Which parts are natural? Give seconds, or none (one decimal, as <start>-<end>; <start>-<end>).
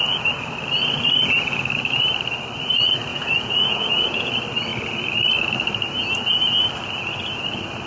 0.0-3.1; 4.3-7.9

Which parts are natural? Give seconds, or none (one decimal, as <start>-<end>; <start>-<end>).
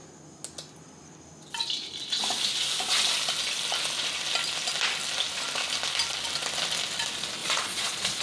0.0-7.4